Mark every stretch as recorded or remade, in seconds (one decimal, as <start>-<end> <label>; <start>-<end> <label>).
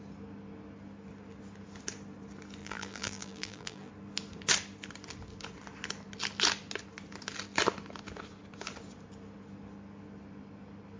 0.0-2.6 recorded; 2.6-3.9 remade; 3.9-11.0 recorded